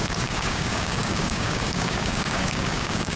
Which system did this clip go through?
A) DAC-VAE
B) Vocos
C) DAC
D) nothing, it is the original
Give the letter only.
C